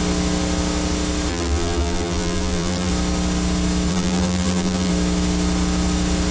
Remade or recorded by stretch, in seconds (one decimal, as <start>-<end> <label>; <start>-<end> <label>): 0.0-1.3 recorded; 1.3-2.9 remade; 2.9-3.9 recorded; 3.9-4.9 remade; 4.9-6.3 recorded